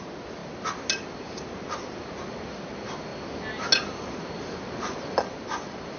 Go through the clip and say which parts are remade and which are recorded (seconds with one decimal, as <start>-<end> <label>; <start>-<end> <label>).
0.0-6.0 recorded